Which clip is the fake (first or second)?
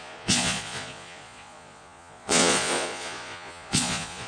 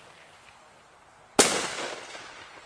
first